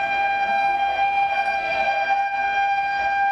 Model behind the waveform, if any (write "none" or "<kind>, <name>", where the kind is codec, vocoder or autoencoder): codec, SNAC